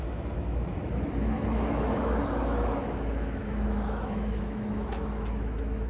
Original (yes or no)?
no